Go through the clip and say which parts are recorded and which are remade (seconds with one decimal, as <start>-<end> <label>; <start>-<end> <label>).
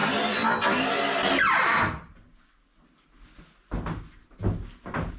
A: 0.0-5.2 recorded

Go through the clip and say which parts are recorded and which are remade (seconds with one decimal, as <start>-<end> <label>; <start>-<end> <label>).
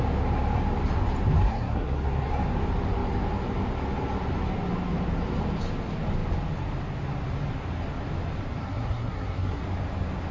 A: 0.0-1.4 recorded; 1.4-2.3 remade; 2.3-8.6 recorded; 8.6-9.6 remade; 9.6-10.3 recorded